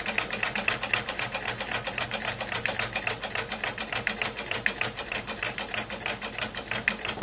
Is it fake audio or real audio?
real